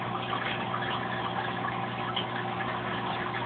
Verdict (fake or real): real